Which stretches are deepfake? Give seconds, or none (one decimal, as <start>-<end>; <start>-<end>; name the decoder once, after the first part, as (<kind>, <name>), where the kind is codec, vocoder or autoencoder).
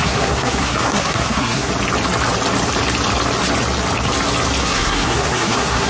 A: 0.0-1.7 (codec, SNAC); 4.6-5.9